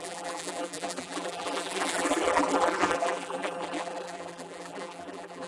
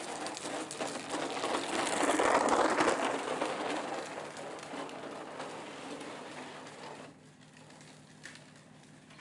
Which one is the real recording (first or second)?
second